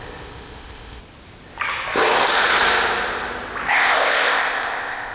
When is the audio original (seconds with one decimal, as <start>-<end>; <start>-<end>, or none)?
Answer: 1.0-3.7